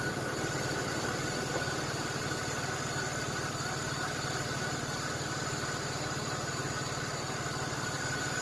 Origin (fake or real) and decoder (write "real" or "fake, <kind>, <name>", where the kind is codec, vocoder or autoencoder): real